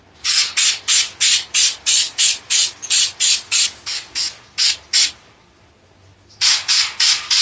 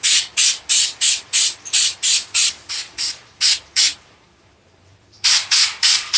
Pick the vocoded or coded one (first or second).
second